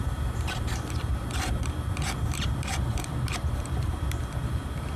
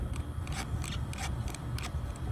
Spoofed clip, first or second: first